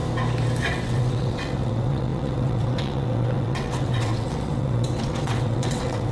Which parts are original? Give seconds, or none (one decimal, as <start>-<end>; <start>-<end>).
0.0-0.7